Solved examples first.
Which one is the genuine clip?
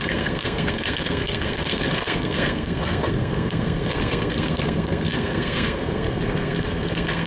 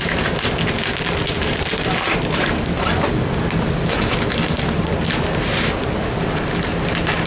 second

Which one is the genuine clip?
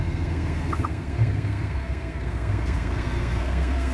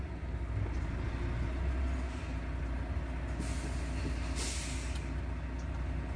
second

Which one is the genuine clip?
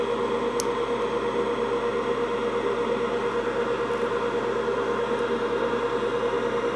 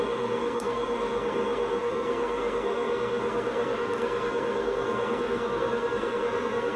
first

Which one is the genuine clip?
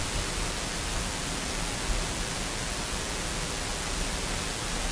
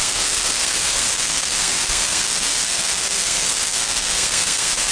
first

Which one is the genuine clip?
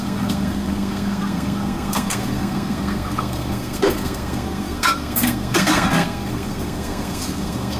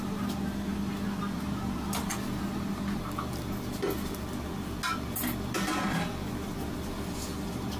second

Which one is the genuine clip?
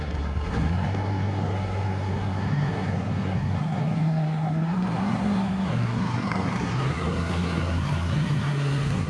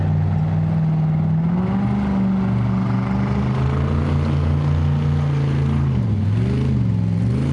second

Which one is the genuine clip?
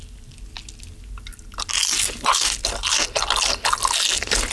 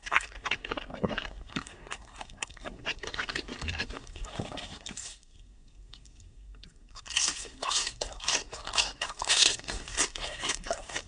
first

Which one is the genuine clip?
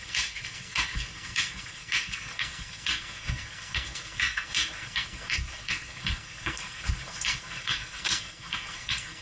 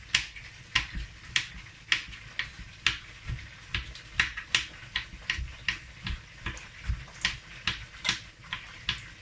second